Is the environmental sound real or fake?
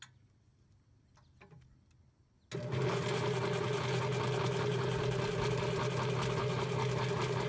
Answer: real